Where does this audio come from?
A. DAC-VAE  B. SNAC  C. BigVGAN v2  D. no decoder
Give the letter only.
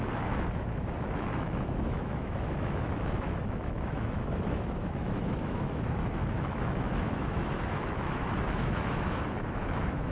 A